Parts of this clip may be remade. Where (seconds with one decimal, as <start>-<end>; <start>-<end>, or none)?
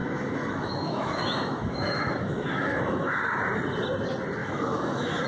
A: 0.0-3.2; 4.4-5.3